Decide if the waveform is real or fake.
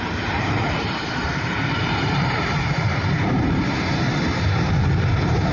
fake